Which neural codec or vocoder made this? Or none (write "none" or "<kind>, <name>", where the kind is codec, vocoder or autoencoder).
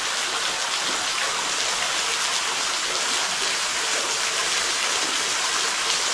none